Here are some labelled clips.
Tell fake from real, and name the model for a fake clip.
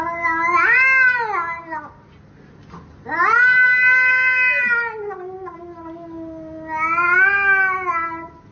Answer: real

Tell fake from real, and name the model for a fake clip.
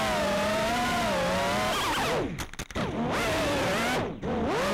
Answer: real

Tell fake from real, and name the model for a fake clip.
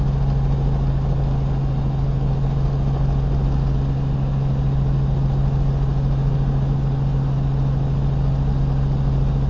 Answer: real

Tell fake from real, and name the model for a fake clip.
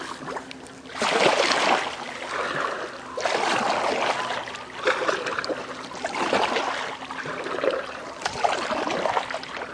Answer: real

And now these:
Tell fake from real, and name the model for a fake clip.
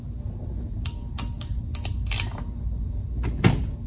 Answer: real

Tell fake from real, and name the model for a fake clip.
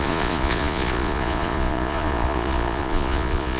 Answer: fake, vocoder, Vocos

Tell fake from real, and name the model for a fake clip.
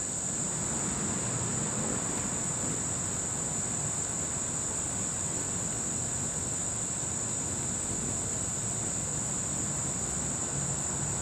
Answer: real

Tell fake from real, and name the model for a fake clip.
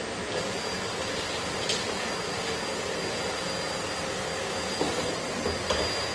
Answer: real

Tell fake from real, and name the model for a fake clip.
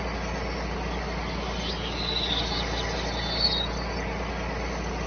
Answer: real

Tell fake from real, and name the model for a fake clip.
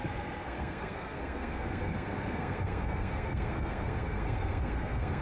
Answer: fake, codec, SNAC